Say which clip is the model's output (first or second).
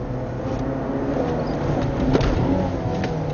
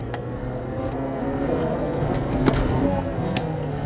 second